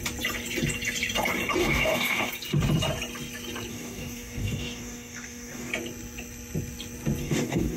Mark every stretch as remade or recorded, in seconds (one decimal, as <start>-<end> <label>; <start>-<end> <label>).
0.0-1.6 recorded; 1.6-2.3 remade; 2.3-3.7 recorded; 3.7-5.7 remade; 5.7-7.2 recorded; 7.2-7.8 remade